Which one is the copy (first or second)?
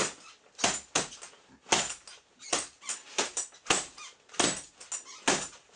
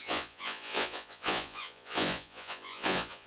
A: second